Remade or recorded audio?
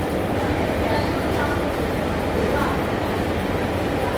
recorded